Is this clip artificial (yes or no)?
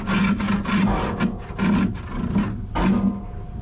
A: no